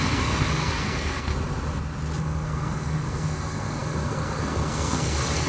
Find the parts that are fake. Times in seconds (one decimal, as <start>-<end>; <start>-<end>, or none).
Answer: 0.0-1.3; 2.2-5.5